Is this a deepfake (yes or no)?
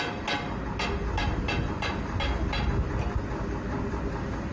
no